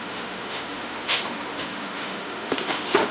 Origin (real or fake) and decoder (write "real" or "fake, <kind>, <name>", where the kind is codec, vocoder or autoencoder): fake, autoencoder, DAC-VAE